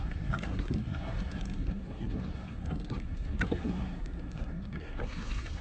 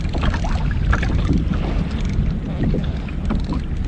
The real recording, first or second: second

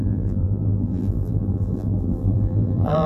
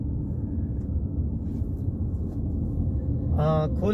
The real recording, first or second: second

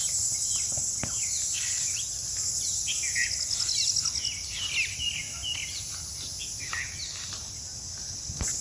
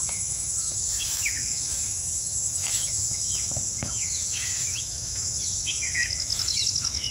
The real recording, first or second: first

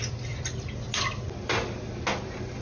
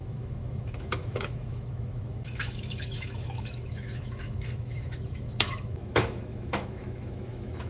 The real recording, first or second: first